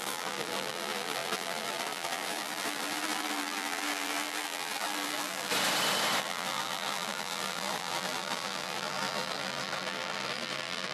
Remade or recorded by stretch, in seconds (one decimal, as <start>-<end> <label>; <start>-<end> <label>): 0.0-5.5 remade; 5.5-6.2 recorded; 6.2-10.9 remade